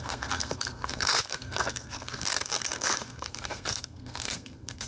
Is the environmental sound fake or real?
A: fake